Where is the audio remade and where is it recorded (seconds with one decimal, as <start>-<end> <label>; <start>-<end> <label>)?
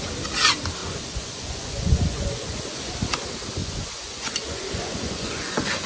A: 0.0-0.8 recorded; 0.8-2.9 remade; 2.9-3.6 recorded; 3.6-5.9 remade